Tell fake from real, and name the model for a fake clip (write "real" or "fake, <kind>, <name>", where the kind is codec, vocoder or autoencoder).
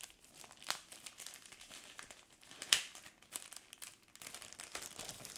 real